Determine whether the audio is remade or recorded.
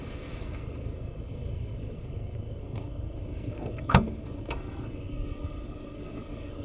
remade